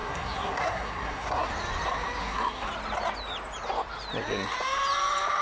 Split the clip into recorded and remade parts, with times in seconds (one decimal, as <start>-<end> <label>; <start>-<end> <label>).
0.0-1.5 remade; 1.5-2.2 recorded; 2.2-2.7 remade; 2.7-5.4 recorded